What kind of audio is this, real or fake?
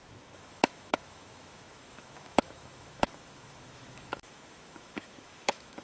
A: fake